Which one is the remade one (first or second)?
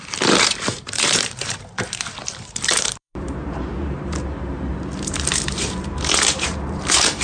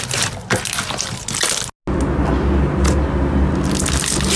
first